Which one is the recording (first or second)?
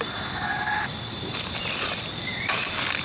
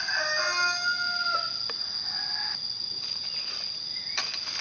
second